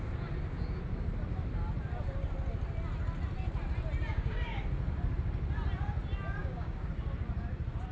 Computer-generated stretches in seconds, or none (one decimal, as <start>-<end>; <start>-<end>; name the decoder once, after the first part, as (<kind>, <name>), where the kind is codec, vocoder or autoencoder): 4.1-4.6 (codec, DAC); 6.4-6.9